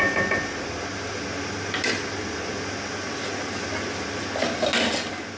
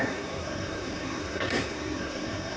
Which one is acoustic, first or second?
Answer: first